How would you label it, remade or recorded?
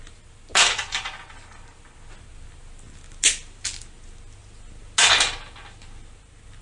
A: recorded